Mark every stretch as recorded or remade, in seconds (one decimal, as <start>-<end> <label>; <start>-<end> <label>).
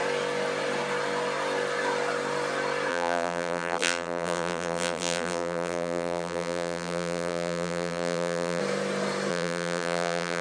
0.0-2.9 recorded; 2.9-8.6 remade; 8.6-9.3 recorded; 9.3-10.4 remade